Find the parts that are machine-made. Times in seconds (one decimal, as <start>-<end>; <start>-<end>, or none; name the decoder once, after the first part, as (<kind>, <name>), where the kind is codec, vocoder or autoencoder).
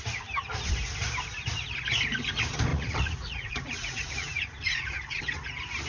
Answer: 2.7-5.2 (vocoder, Vocos)